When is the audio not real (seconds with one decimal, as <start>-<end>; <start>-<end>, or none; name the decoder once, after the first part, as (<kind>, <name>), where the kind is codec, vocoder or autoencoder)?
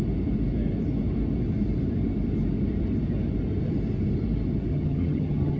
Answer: 4.7-5.6 (vocoder, HiFi-GAN)